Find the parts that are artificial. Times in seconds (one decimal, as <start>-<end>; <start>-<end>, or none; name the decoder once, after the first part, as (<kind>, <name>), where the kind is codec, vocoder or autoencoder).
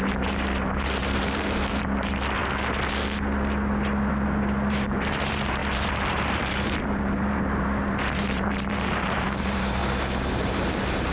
0.0-2.4 (vocoder, BigVGAN v2); 4.7-9.8; 10.3-11.1